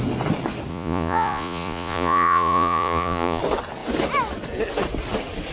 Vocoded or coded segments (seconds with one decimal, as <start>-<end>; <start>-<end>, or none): 0.7-3.4